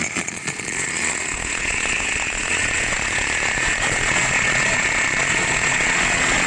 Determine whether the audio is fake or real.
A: fake